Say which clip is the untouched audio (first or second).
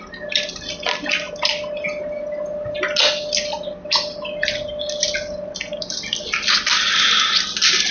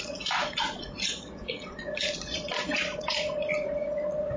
first